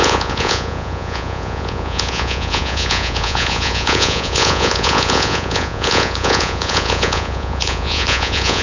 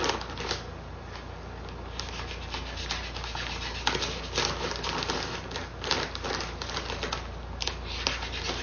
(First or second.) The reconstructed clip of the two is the first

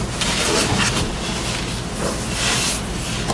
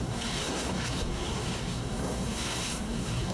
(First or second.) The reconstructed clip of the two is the second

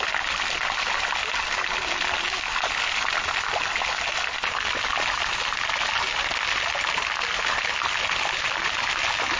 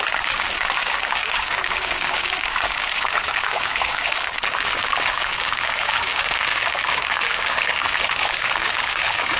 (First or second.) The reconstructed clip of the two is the second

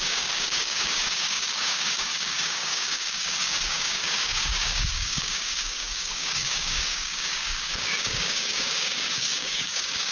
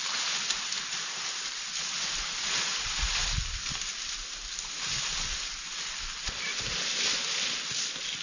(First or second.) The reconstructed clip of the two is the first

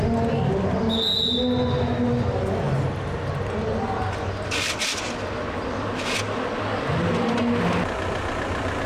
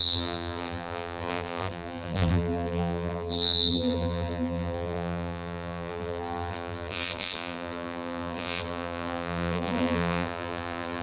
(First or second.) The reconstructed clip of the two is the second